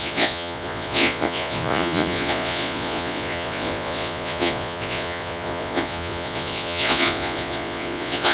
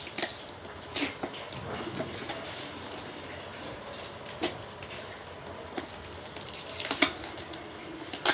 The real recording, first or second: second